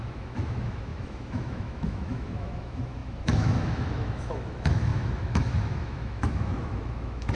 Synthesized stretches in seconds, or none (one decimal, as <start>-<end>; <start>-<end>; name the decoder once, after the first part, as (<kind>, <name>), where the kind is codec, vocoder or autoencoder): 0.0-7.3 (autoencoder, DAC-VAE)